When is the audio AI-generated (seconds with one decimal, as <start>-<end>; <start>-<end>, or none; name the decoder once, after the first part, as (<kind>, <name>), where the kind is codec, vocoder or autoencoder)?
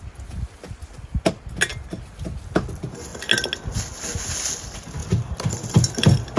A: 5.0-6.4 (vocoder, BigVGAN v2)